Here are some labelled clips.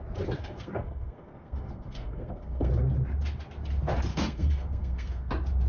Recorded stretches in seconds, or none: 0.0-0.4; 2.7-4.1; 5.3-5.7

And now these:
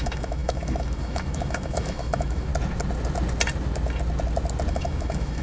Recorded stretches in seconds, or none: 2.5-4.7

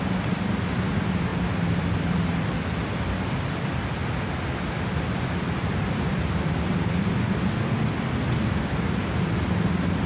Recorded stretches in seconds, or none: 0.0-6.1; 7.1-10.1

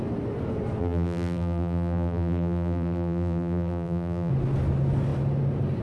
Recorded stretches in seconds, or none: 0.0-0.8; 4.3-5.8

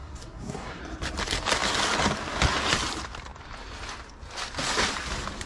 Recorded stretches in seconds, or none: 0.8-5.5

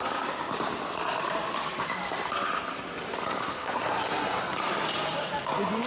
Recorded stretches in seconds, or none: 0.0-3.4; 4.4-5.9